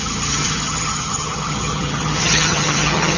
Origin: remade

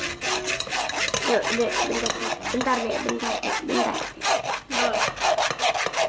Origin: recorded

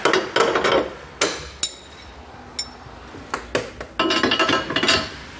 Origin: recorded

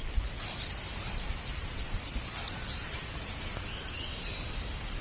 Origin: recorded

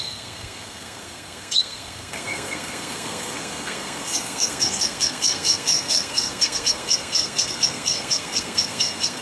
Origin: remade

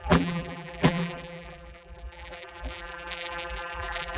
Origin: remade